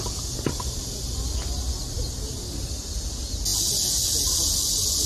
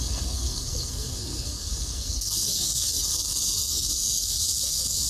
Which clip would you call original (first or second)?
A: first